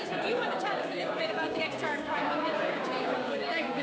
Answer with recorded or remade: remade